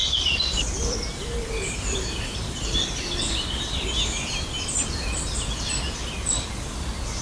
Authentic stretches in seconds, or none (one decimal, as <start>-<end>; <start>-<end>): 4.3-7.2